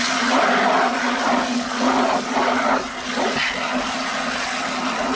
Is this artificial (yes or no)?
no